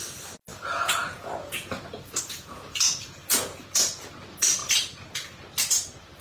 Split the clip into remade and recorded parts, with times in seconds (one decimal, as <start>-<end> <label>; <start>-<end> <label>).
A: 0.0-0.5 recorded; 0.5-4.1 remade; 4.1-6.2 recorded